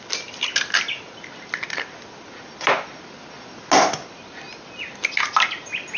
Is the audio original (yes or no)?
yes